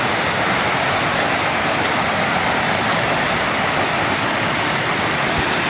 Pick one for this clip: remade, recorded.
recorded